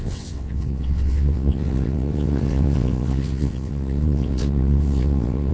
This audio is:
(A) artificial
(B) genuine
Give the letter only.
A